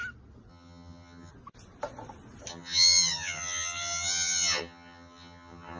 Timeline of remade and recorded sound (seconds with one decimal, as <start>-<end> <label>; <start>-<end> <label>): 0.0-0.5 recorded; 0.5-1.3 remade; 1.3-2.5 recorded; 2.5-5.8 remade